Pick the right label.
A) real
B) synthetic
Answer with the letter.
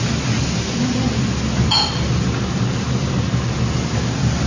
A